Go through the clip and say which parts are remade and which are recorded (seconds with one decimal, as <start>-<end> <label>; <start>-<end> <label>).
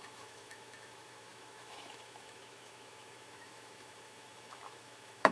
0.0-5.3 remade